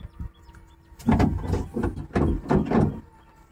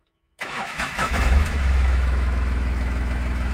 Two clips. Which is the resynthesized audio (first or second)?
second